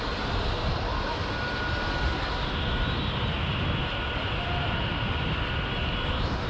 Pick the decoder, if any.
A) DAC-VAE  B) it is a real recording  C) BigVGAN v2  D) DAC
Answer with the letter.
B